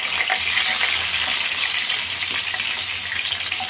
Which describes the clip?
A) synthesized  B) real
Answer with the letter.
B